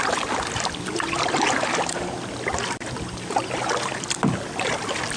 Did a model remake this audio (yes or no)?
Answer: no